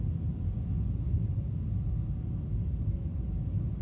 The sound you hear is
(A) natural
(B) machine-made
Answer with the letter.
A